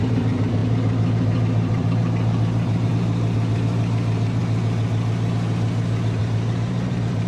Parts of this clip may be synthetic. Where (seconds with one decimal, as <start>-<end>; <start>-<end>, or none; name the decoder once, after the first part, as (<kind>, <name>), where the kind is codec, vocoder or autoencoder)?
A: 0.0-4.4 (vocoder, BigVGAN v2); 6.2-7.3

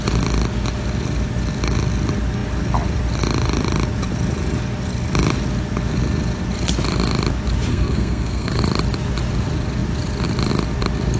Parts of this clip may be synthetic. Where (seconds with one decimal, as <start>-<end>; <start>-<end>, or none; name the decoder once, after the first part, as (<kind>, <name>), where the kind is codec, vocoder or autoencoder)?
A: 7.7-8.6 (codec, SNAC)

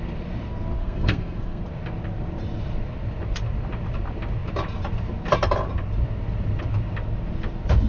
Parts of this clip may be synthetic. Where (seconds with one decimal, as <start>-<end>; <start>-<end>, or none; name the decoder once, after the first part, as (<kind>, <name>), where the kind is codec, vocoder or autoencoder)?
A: 0.8-1.6 (codec, SNAC)

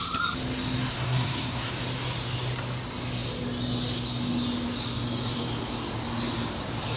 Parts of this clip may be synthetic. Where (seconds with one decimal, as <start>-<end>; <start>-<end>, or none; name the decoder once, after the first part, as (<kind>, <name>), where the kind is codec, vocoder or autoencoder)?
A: 0.9-1.7 (codec, SNAC)

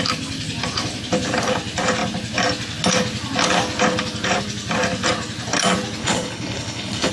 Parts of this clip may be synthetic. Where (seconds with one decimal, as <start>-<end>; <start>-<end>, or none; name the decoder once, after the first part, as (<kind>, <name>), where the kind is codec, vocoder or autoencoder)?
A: 6.0-7.1 (codec, HILCodec)

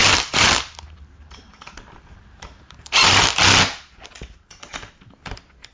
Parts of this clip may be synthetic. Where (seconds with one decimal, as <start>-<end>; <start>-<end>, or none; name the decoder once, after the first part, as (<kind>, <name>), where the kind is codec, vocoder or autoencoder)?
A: 0.0-3.4 (vocoder, BigVGAN v2)

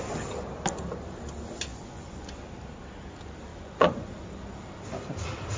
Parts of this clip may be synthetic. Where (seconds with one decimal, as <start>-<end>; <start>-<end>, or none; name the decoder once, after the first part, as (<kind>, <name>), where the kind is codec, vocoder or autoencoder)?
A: 1.7-2.3 (vocoder, Vocos); 3.5-4.1

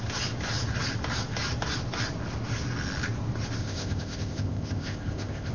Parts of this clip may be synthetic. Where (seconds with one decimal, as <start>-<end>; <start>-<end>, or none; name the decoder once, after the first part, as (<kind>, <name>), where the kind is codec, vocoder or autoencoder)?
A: 3.6-5.5 (codec, ZipCodec)